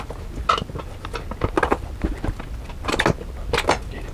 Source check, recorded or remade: recorded